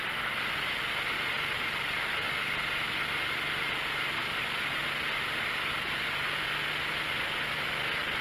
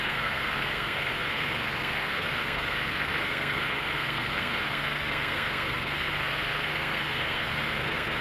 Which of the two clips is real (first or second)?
first